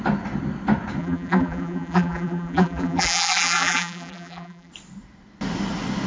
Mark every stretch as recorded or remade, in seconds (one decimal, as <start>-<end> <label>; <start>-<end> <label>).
0.0-1.0 recorded; 1.0-4.7 remade; 4.7-6.1 recorded